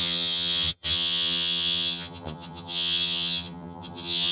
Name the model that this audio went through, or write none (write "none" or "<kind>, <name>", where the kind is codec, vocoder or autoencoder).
vocoder, HiFi-GAN